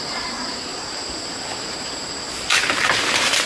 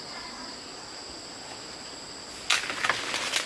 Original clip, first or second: second